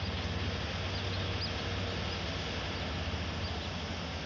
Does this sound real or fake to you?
real